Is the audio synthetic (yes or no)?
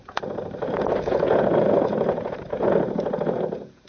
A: yes